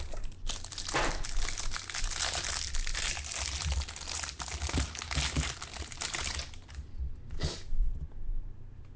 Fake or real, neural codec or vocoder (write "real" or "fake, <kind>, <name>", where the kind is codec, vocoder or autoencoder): real